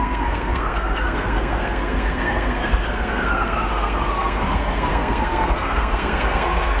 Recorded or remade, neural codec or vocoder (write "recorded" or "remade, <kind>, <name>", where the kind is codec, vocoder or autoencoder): remade, codec, SNAC